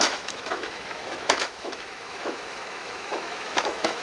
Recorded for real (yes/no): no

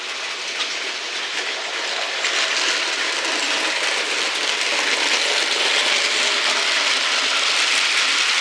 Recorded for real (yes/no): yes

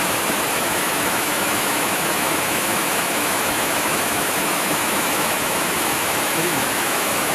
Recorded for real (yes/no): no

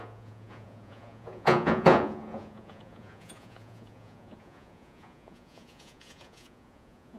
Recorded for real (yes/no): no